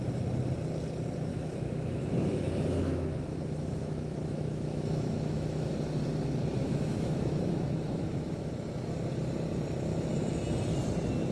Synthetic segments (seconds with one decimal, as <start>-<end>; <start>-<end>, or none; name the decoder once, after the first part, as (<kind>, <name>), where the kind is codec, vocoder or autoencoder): 1.3-5.7 (autoencoder, DAC-VAE); 6.6-8.5

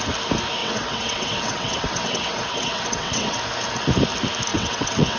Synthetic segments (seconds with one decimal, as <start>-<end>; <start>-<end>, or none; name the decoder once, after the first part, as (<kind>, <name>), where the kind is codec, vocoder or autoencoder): 0.6-3.4 (vocoder, WaveNeXt); 4.5-5.2

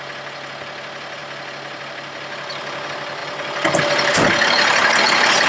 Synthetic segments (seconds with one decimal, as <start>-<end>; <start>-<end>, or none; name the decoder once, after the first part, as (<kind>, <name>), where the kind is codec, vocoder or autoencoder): none

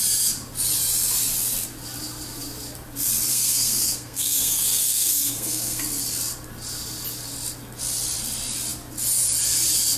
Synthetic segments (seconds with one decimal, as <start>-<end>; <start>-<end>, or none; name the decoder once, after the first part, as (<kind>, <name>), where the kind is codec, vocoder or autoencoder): 3.3-5.8 (codec, SNAC)

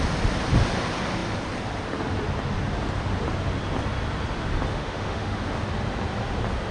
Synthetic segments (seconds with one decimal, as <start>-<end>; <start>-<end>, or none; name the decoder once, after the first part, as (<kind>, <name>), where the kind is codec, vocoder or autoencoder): 4.7-5.4 (autoencoder, DAC-VAE)